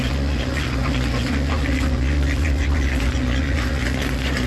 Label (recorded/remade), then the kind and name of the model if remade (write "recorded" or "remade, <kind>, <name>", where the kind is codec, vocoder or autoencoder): remade, vocoder, Vocos